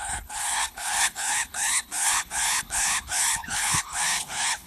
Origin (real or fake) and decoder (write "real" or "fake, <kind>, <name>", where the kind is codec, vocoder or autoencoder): fake, codec, HILCodec